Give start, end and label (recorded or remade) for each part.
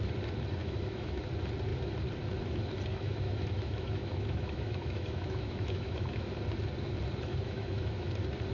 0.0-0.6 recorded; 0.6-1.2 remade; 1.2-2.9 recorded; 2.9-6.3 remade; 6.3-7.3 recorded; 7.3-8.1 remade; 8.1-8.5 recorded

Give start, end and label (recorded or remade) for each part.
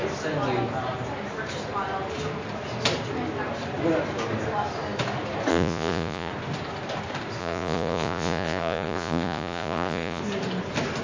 0.0-5.5 recorded; 5.5-6.3 remade; 6.3-7.4 recorded; 7.4-10.2 remade; 10.2-11.0 recorded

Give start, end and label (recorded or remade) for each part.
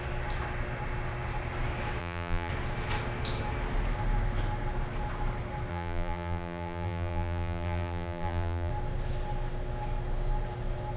0.0-2.0 recorded; 2.0-2.5 remade; 2.5-5.7 recorded; 5.7-8.7 remade; 8.7-11.0 recorded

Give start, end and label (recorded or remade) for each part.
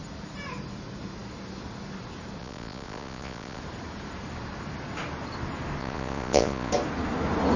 0.0-2.4 recorded; 2.4-3.6 remade; 3.6-5.8 recorded; 5.8-6.7 remade; 6.7-7.6 recorded